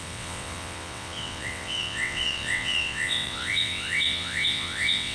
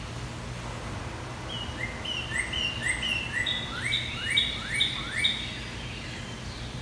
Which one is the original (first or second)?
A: second